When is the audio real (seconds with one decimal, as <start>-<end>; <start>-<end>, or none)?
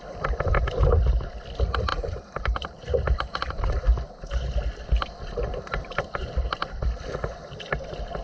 0.0-1.9; 3.8-5.5; 6.8-8.2